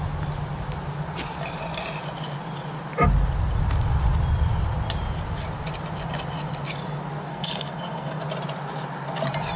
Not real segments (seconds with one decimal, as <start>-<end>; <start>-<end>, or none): 7.3-8.2